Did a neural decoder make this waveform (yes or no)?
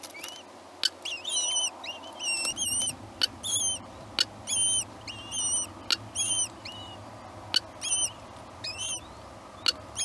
no